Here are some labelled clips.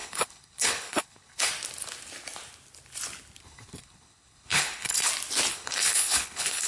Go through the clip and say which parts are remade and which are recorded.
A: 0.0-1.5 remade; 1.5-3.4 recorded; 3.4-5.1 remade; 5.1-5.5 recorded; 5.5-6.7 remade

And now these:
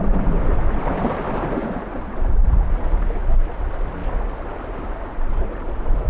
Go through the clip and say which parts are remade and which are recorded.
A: 0.0-1.6 remade; 1.6-2.4 recorded; 2.4-4.0 remade; 4.0-5.1 recorded; 5.1-6.1 remade